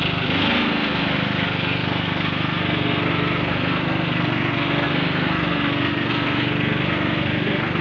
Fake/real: fake